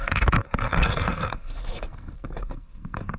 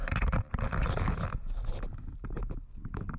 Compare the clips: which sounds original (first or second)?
second